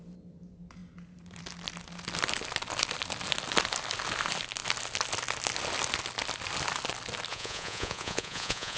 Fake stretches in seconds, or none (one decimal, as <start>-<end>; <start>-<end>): 7.3-8.8